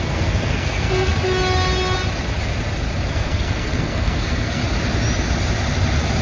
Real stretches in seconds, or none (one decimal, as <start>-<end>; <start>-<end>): 1.1-3.1; 4.6-6.2